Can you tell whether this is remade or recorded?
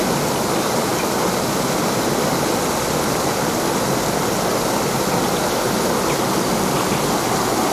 recorded